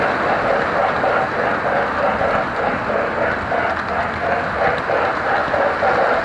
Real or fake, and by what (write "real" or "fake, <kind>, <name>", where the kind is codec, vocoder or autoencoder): real